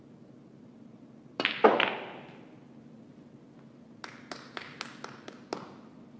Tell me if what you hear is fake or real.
real